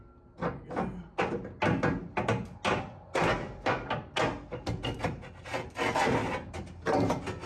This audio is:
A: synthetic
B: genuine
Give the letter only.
B